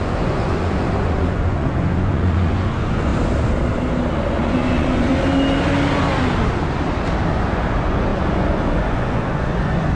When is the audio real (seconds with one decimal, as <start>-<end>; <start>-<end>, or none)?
3.1-4.1; 5.1-7.3